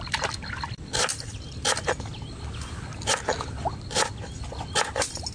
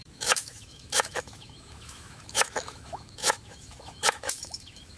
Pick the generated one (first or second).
second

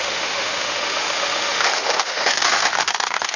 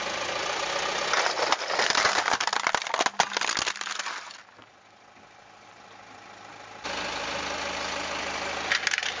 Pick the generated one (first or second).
first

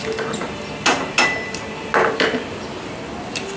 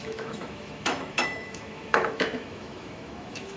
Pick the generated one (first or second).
second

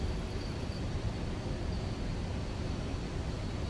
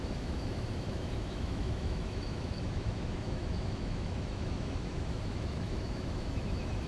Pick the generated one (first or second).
second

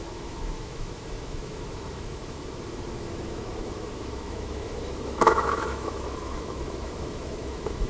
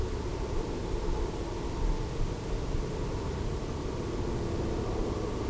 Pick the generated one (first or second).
first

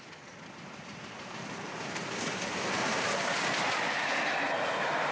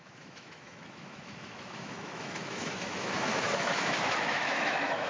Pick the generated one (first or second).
second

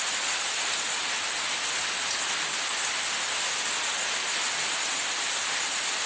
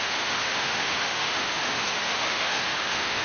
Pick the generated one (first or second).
second